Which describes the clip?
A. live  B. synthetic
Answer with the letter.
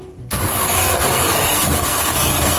B